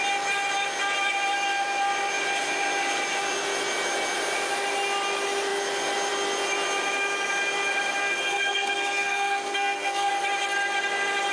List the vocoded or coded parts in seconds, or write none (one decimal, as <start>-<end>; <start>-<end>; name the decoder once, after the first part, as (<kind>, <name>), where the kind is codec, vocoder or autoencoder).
8.0-10.1 (codec, SNAC)